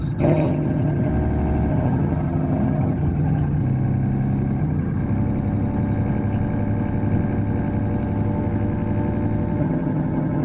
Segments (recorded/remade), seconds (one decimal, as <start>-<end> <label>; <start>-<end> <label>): 0.0-1.1 remade; 1.1-1.7 recorded; 1.7-3.6 remade; 3.6-4.6 recorded; 4.6-5.0 remade; 5.0-9.6 recorded; 9.6-10.4 remade